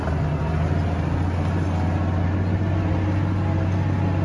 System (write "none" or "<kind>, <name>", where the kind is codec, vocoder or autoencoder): none